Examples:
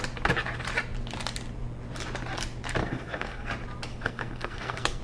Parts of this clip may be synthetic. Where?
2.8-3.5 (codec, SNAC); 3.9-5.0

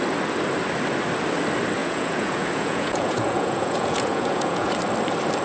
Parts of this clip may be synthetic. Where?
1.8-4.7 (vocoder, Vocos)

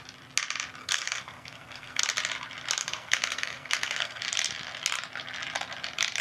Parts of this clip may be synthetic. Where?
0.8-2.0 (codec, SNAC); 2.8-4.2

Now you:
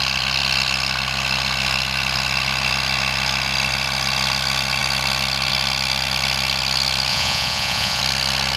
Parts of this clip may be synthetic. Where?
7.1-8.0 (vocoder, Vocos)

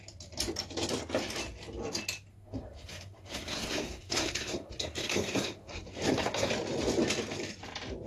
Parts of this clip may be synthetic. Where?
2.3-6.5 (codec, SNAC)